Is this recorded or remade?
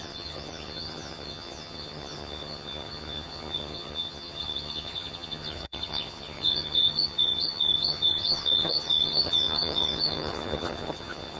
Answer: remade